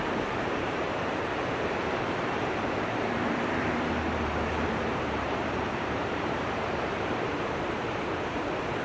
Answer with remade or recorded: remade